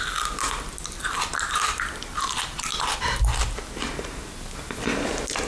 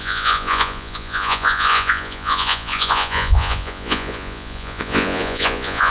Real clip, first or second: first